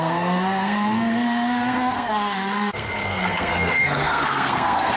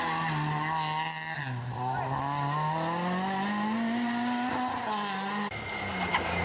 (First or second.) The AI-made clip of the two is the first